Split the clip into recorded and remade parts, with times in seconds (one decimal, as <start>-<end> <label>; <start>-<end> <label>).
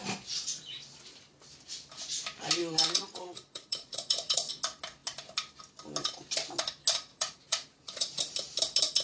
0.0-2.6 recorded; 2.6-4.5 remade; 4.5-7.1 recorded; 7.1-8.2 remade; 8.2-9.0 recorded